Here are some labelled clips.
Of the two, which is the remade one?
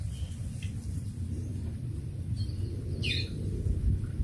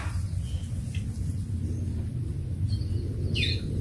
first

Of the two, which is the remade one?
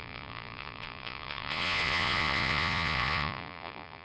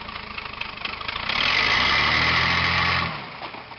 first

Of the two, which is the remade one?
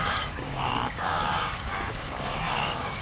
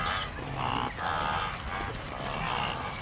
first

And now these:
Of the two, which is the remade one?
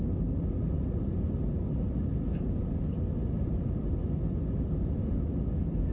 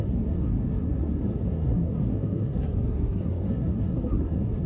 second